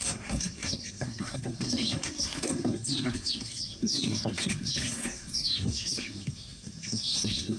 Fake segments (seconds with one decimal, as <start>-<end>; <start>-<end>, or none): 0.0-7.6